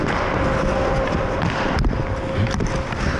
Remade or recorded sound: recorded